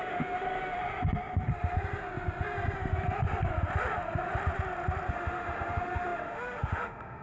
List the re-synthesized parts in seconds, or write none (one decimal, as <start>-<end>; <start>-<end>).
0.0-0.8; 5.1-7.2